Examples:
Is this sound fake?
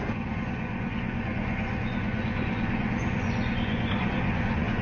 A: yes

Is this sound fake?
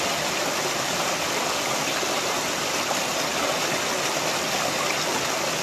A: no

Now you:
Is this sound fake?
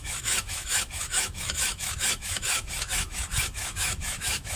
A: yes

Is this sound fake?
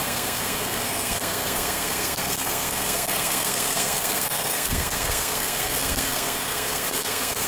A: yes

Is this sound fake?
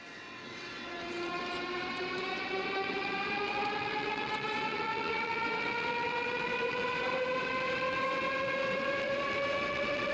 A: yes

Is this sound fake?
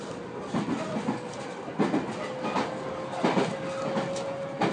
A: no